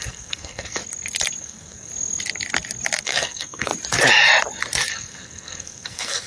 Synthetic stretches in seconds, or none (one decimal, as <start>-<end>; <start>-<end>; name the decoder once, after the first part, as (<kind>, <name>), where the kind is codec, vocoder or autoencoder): 0.0-0.8 (codec, SNAC); 1.4-1.9; 3.0-3.7; 4.9-6.3